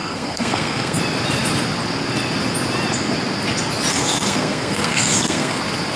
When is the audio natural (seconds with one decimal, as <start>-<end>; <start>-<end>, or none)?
1.0-3.9; 5.6-6.0